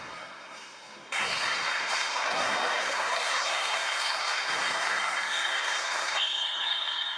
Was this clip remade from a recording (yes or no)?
yes